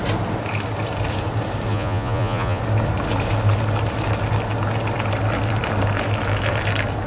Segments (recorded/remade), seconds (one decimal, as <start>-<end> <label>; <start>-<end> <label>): 0.0-1.7 recorded; 1.7-2.6 remade; 2.6-7.1 recorded